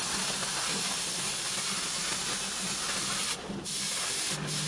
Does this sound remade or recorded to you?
recorded